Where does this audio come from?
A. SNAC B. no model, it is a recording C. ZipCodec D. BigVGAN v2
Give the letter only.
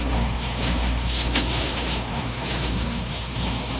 A